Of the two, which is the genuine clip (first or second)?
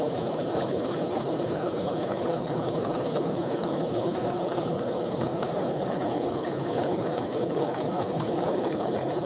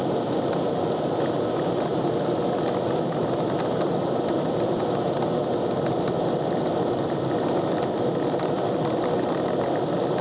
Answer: second